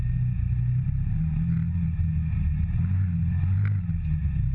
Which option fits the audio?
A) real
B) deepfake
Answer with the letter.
A